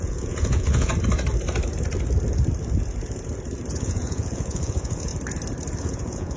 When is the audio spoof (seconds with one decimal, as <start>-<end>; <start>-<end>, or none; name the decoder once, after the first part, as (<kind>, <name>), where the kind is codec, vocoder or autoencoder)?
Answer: 0.0-0.9 (vocoder, Vocos); 3.7-5.1; 5.8-6.4